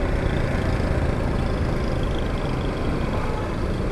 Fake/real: real